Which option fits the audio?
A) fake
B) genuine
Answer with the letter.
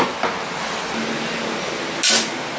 B